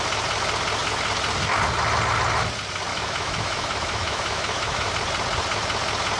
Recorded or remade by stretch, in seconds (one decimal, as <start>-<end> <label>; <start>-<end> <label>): 0.0-2.9 recorded; 2.9-4.9 remade; 4.9-6.2 recorded